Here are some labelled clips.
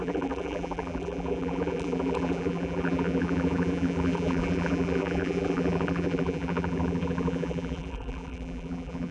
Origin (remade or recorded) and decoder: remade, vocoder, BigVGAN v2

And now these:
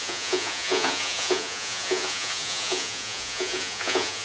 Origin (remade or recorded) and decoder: remade, vocoder, Vocos